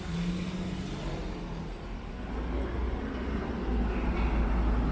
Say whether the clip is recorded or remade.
recorded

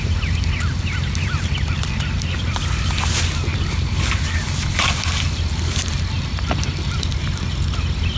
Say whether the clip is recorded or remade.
recorded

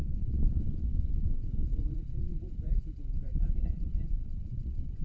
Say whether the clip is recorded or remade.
remade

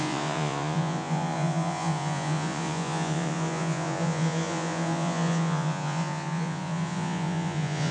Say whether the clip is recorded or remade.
remade